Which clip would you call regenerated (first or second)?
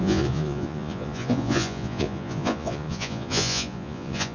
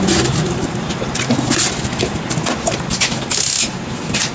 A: first